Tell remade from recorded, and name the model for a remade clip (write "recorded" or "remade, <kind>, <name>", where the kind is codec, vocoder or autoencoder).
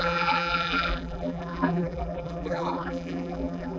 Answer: remade, vocoder, BigVGAN v2